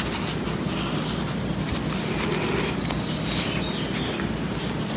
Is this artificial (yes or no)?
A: no